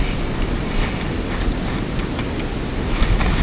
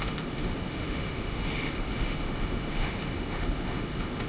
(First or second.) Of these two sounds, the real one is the first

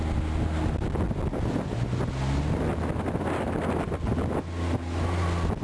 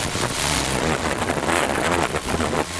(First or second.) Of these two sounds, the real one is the first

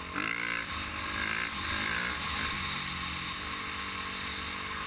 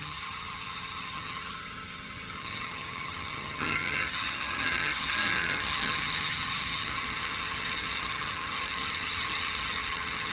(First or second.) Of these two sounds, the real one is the first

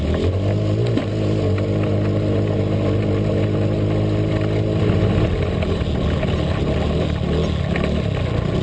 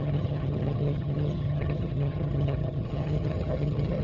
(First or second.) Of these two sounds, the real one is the first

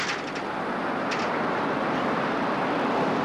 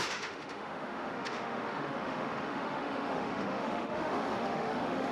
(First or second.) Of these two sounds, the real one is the first